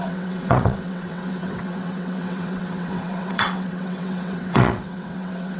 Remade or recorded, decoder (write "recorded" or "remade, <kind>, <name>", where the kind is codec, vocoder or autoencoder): remade, vocoder, WaveNeXt